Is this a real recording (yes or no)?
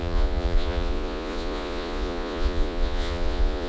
no